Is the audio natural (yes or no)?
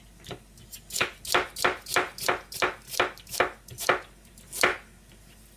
yes